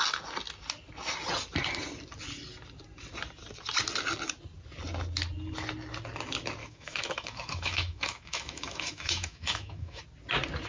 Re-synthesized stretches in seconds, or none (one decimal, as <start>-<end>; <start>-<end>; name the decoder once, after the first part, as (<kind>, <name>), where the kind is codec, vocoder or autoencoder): 6.6-10.0 (autoencoder, DAC-VAE)